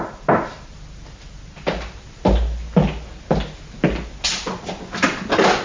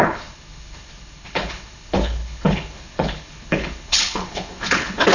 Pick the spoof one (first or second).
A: second